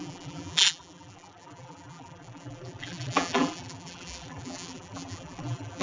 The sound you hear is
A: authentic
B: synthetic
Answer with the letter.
B